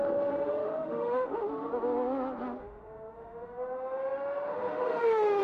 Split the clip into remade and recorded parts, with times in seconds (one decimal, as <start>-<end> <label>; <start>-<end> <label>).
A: 0.0-1.7 remade; 1.7-2.6 recorded; 2.6-5.4 remade